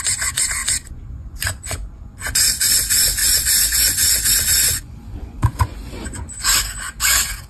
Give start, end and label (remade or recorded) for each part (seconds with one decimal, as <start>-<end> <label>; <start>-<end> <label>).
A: 0.0-6.5 remade; 6.5-7.0 recorded; 7.0-7.5 remade